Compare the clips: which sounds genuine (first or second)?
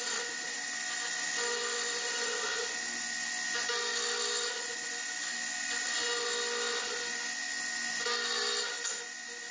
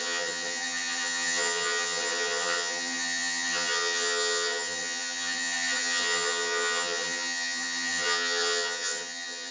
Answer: first